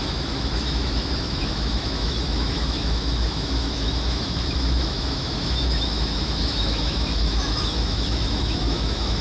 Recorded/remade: remade